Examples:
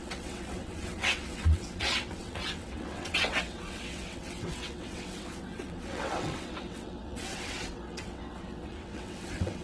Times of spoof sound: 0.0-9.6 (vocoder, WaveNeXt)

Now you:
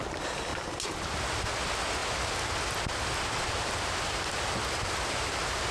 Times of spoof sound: none

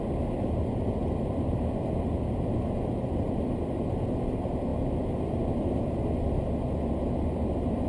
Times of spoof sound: none

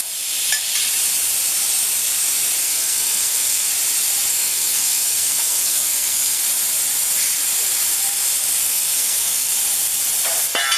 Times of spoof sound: 2.6-3.7 (codec, SNAC); 4.3-6.4; 8.6-9.5

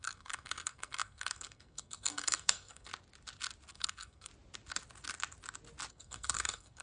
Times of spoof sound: 0.0-2.9 (codec, SNAC); 3.7-4.3; 5.9-6.8